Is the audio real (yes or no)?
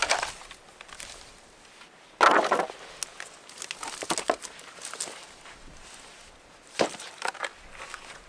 yes